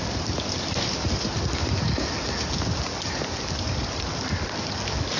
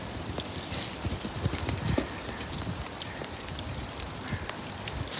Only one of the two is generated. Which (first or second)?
second